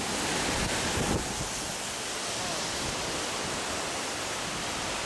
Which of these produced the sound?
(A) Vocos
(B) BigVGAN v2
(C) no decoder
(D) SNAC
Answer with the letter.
C